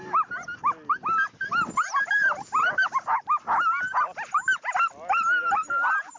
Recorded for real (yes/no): yes